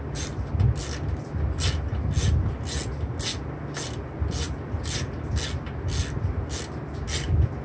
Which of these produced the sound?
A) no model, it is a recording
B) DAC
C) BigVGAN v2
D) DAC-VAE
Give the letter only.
A